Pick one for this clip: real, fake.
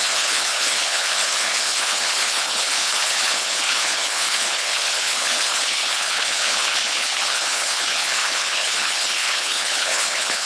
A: fake